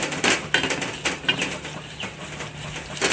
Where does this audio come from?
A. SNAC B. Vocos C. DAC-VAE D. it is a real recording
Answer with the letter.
D